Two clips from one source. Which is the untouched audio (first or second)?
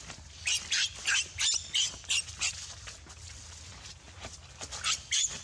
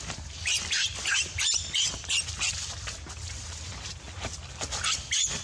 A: first